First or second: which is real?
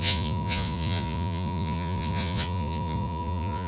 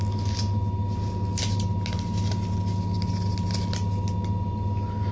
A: second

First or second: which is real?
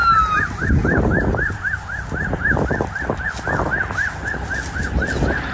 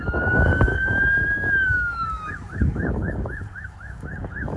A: first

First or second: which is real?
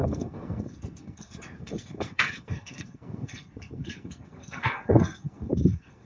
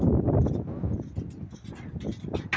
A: second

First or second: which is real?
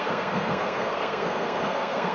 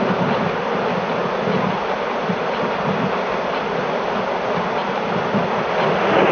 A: second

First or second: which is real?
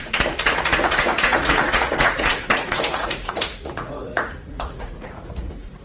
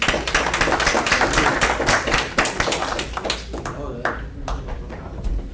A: second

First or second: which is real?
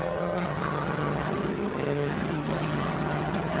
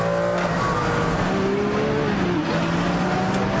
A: second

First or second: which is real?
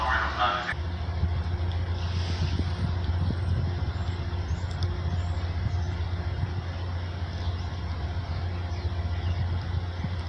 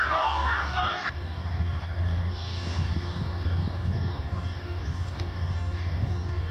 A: first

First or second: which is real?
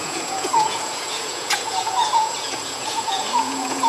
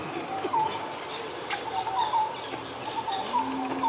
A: second